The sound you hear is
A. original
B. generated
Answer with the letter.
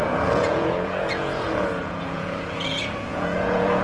B